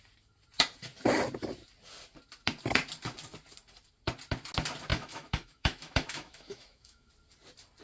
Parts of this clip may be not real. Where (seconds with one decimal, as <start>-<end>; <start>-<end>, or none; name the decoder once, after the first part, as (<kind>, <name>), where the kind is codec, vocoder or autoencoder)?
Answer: 4.9-7.1 (autoencoder, DAC-VAE)